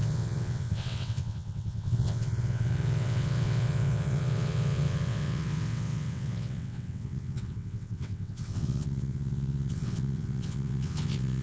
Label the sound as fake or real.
fake